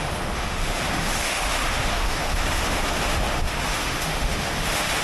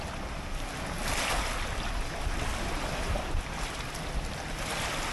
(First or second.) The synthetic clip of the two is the first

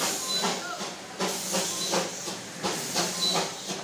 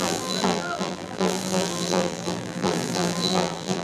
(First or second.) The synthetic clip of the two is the second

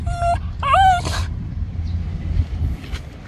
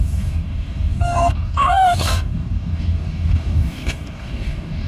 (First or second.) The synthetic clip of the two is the second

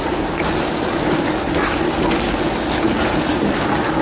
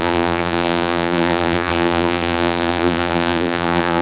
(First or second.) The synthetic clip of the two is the second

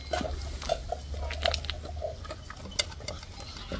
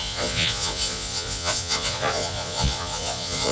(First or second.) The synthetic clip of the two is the second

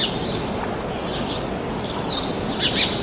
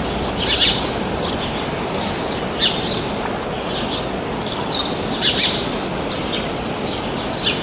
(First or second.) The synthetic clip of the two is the second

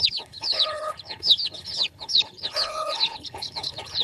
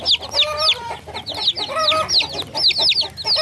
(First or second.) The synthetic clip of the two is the first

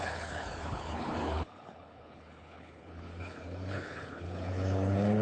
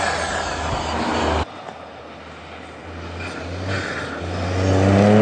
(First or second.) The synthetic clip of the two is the first